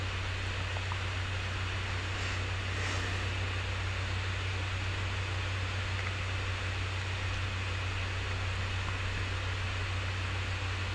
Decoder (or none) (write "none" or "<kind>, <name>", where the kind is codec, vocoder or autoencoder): none